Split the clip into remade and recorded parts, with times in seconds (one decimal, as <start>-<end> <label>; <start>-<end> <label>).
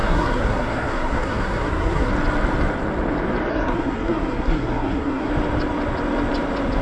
0.0-2.1 remade; 2.1-3.5 recorded; 3.5-5.3 remade; 5.3-6.8 recorded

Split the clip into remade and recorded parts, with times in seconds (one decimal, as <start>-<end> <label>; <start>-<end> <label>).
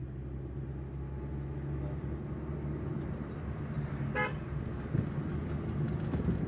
0.0-6.5 recorded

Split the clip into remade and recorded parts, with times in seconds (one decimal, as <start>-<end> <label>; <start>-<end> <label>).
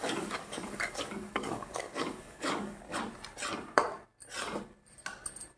0.0-3.0 remade; 3.0-5.6 recorded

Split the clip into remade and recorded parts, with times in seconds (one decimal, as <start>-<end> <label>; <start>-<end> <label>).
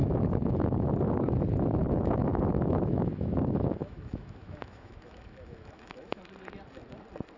0.0-0.9 remade; 0.9-1.8 recorded; 1.8-6.2 remade; 6.2-7.4 recorded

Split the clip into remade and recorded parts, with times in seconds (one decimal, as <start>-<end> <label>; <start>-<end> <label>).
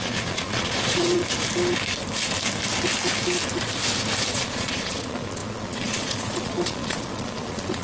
0.0-1.2 remade; 1.2-4.3 recorded; 4.3-7.8 remade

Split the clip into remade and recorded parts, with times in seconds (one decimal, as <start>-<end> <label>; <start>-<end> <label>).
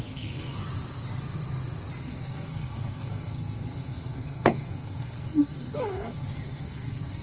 0.0-0.6 remade; 0.6-2.0 recorded; 2.0-7.2 remade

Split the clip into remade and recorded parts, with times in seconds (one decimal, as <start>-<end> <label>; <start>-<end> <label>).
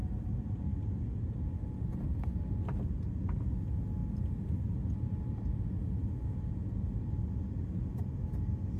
0.0-8.8 recorded